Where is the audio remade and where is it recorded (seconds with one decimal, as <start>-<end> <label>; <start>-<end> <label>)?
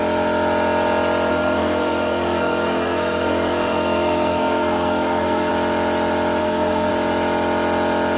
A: 0.0-1.3 recorded; 1.3-5.5 remade; 5.5-6.4 recorded; 6.4-6.9 remade; 6.9-8.2 recorded